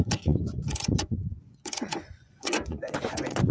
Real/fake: fake